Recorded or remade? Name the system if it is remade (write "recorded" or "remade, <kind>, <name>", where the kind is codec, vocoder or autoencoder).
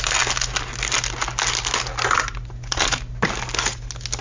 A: recorded